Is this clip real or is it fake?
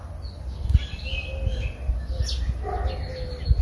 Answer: real